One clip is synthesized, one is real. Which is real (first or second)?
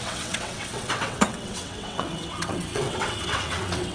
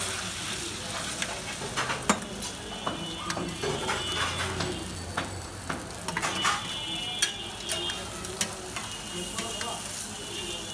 second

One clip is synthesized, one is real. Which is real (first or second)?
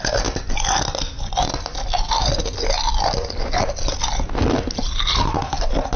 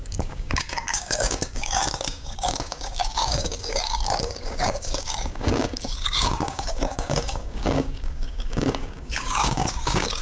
first